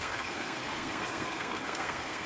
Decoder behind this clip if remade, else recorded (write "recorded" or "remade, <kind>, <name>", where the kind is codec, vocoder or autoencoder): remade, codec, SNAC